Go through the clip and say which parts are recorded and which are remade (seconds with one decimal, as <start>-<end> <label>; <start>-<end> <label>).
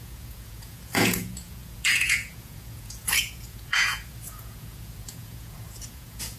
0.0-6.4 remade